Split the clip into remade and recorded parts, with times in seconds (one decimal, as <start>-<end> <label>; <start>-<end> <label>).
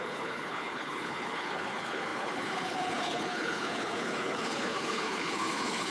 0.0-5.9 remade